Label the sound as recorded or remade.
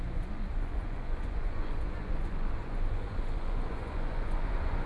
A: remade